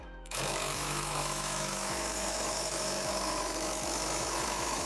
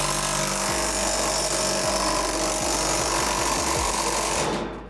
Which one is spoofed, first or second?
first